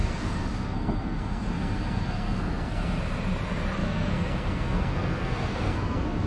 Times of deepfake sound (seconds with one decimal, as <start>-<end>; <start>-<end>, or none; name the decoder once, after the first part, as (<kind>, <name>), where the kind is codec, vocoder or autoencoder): 0.0-3.0 (codec, SNAC); 3.8-6.3